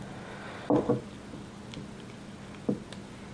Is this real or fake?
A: real